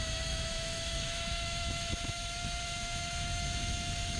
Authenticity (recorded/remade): remade